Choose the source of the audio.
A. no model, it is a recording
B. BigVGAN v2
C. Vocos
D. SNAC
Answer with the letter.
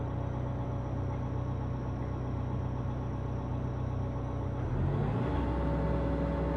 A